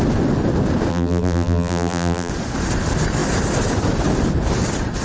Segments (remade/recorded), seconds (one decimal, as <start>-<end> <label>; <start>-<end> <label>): 0.0-0.9 recorded; 0.9-2.3 remade; 2.3-5.0 recorded